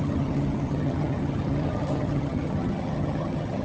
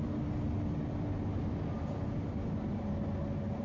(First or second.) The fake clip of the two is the first